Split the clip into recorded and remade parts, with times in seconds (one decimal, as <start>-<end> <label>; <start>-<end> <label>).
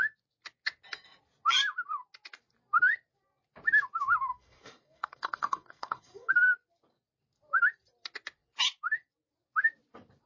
0.0-4.3 recorded; 4.3-6.3 remade; 6.3-10.3 recorded